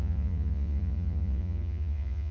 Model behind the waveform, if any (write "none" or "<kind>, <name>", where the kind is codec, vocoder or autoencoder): vocoder, Vocos